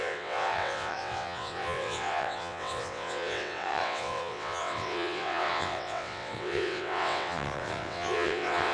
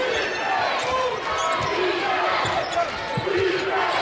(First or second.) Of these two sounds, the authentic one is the second